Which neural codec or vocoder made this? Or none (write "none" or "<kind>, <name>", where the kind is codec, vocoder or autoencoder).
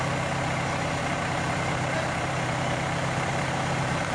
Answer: vocoder, BigVGAN v2